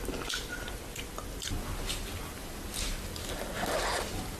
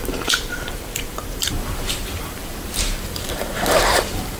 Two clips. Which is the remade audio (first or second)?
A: second